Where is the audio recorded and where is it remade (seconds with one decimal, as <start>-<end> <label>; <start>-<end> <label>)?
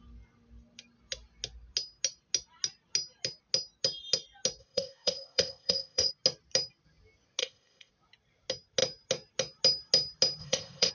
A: 0.0-4.6 recorded; 4.6-6.1 remade; 6.1-7.4 recorded; 7.4-7.9 remade; 7.9-10.4 recorded; 10.4-10.9 remade